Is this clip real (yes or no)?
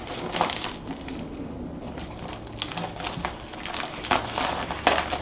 yes